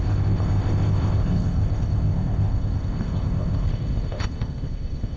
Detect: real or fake fake